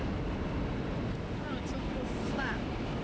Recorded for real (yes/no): yes